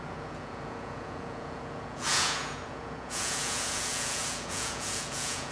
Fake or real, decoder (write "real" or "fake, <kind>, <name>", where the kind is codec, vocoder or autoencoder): fake, vocoder, Vocos